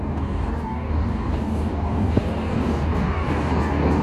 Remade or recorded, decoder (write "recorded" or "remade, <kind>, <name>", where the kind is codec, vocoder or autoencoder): remade, codec, DAC